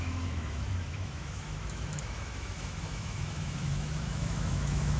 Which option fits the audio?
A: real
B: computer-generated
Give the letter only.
B